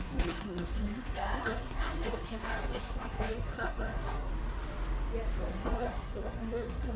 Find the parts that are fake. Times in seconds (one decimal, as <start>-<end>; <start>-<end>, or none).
0.0-4.3; 5.5-7.0

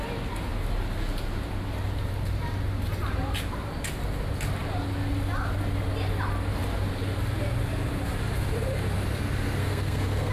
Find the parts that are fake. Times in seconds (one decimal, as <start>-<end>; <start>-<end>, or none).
9.6-10.3

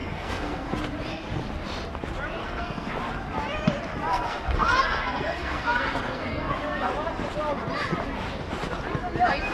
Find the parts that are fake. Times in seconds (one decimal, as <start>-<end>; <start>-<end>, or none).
0.0-0.7; 2.4-2.9; 4.1-6.9

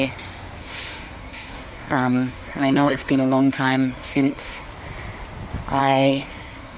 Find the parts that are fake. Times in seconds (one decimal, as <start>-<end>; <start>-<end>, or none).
0.6-4.7; 5.8-6.8

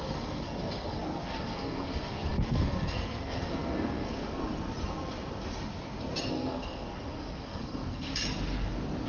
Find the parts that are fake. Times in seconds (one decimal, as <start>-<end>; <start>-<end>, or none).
0.0-4.4; 6.3-8.1